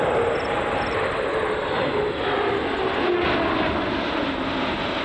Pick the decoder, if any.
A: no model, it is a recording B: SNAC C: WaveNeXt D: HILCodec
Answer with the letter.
A